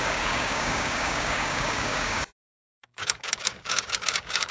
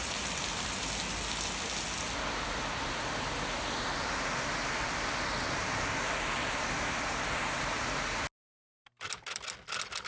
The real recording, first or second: second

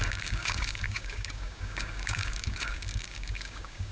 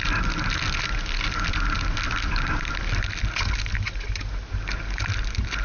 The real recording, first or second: second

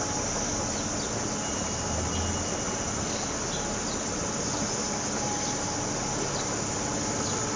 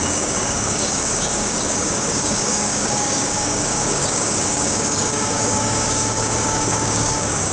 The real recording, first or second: first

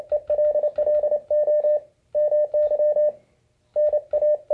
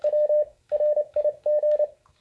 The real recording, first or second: first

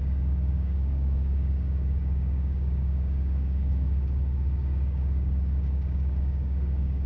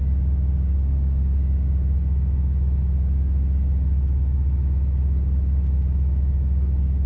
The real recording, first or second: second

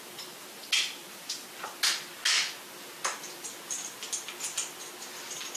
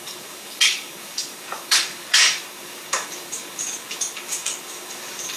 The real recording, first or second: first